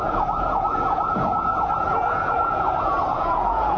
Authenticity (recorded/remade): remade